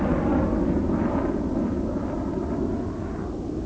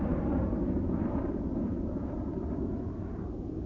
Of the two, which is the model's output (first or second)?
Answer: second